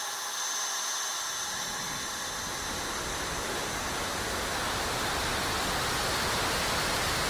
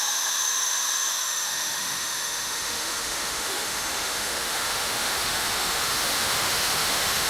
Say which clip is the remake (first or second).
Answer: second